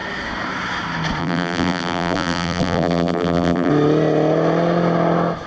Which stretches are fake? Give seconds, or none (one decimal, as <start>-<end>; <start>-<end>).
1.2-3.7